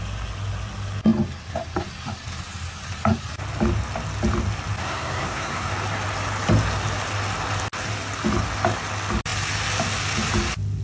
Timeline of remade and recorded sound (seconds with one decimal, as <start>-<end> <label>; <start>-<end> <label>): 0.0-4.8 recorded; 4.8-5.7 remade; 5.7-10.8 recorded